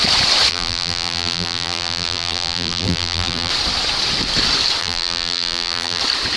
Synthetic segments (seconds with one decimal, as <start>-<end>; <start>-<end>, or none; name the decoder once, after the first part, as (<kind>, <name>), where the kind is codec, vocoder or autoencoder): 0.5-3.5 (vocoder, BigVGAN v2); 4.8-6.0